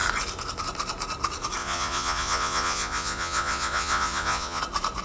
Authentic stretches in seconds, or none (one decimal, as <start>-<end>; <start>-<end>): 0.0-1.6; 4.6-5.0

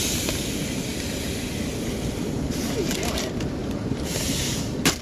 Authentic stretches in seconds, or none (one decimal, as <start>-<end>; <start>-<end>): 0.0-3.6

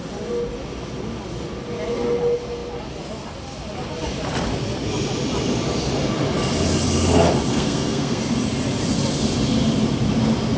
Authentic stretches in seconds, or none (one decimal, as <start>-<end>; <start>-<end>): 0.0-7.5; 8.2-10.6

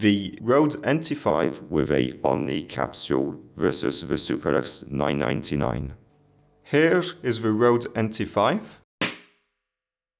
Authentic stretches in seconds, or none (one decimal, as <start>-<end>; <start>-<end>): 0.0-1.3; 6.1-10.2

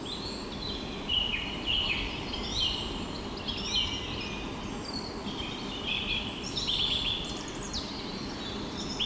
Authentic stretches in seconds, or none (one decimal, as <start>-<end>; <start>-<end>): 0.0-0.6; 3.0-5.2

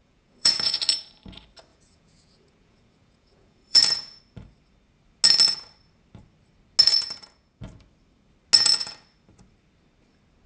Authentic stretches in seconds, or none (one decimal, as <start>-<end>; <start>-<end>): 0.8-1.7; 4.2-6.9; 7.6-10.5

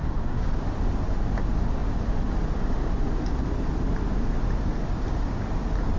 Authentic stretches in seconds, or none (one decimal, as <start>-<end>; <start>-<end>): 0.6-6.0